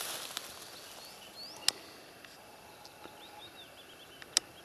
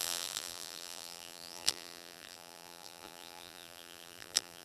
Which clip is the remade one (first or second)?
second